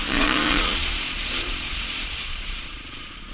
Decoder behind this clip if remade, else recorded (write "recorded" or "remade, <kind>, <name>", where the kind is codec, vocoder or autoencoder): remade, vocoder, Vocos